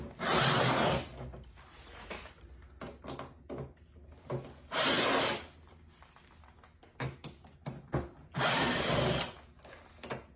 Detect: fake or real real